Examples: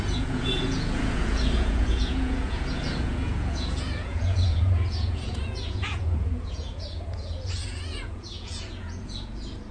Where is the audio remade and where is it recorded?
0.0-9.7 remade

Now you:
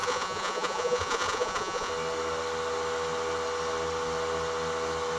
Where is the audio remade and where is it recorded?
0.0-1.9 remade; 1.9-5.2 recorded